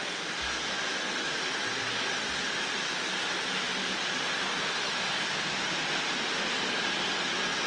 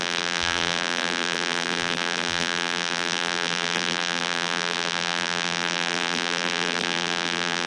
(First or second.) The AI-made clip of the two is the second